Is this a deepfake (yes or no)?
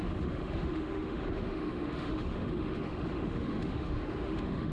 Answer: yes